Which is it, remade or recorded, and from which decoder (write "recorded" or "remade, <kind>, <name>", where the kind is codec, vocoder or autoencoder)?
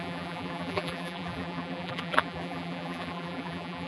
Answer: remade, vocoder, BigVGAN v2